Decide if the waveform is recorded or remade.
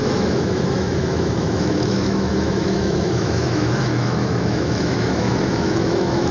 remade